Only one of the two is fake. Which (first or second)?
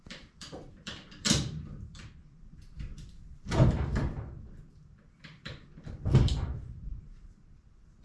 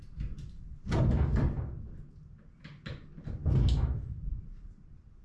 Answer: first